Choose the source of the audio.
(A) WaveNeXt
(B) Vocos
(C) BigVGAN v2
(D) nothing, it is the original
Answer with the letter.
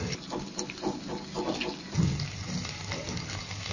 D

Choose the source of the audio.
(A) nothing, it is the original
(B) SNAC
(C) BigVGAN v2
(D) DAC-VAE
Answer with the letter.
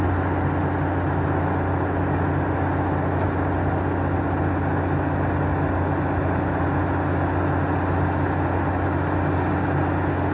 A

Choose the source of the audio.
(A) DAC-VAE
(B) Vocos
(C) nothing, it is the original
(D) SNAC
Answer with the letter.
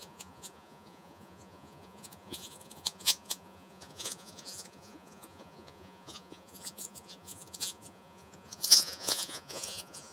B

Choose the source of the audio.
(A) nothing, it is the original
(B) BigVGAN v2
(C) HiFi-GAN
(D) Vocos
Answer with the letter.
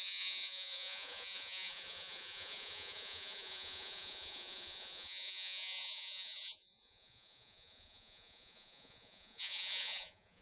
D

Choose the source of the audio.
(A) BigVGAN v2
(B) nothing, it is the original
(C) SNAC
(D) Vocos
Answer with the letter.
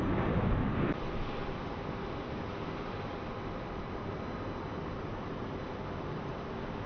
B